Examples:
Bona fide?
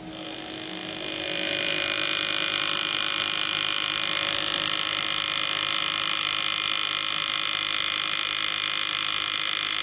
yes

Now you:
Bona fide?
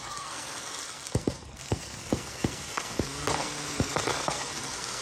no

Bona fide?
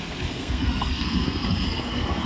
no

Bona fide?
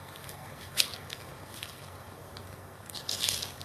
no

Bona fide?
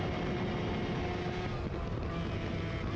yes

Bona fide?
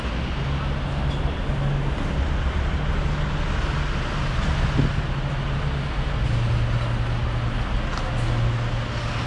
yes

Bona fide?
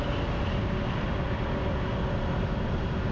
yes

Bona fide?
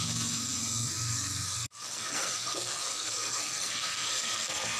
no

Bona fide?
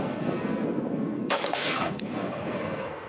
no